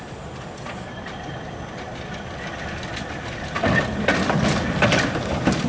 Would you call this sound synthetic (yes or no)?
no